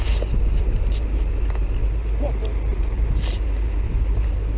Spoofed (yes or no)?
no